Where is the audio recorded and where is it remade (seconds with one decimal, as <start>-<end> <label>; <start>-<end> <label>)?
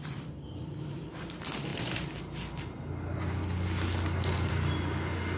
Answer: 0.0-5.4 recorded